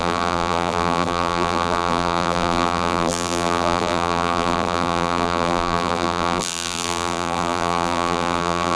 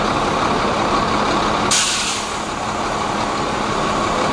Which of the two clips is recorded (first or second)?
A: second